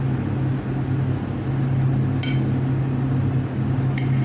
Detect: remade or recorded recorded